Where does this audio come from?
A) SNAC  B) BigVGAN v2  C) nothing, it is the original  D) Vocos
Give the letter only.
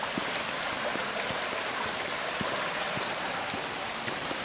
C